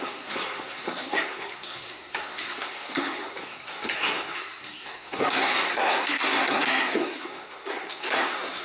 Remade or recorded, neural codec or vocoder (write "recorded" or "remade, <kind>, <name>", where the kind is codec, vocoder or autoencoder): remade, codec, SNAC